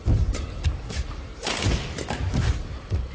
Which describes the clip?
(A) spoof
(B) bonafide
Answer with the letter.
B